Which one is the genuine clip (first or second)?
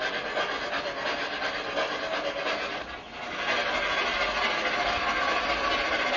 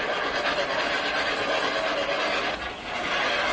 first